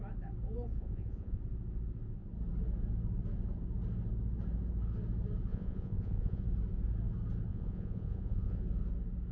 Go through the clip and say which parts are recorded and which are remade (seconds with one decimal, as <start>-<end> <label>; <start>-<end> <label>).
0.0-0.7 recorded; 0.7-1.4 remade; 1.4-5.5 recorded; 5.5-6.4 remade; 6.4-7.5 recorded; 7.5-8.6 remade; 8.6-9.3 recorded